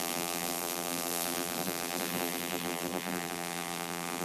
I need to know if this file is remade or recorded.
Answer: remade